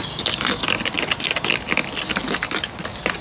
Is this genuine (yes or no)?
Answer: yes